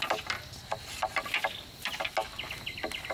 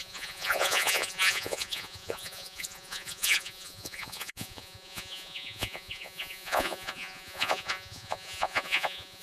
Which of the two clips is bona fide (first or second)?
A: first